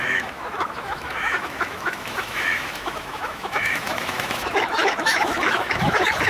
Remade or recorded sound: remade